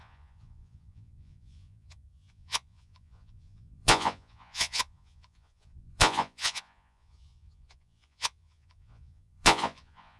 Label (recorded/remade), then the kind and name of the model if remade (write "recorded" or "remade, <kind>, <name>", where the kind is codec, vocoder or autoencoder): remade, vocoder, Vocos